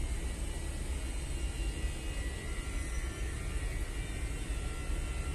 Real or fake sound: real